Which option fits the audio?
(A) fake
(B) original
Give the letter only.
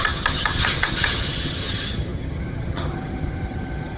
A